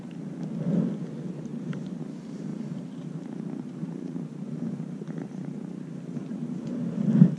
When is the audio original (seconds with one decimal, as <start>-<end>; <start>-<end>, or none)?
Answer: 0.0-1.5; 2.0-2.5; 6.0-7.4